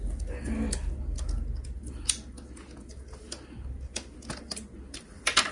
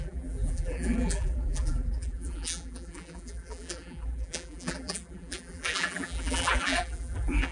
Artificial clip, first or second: second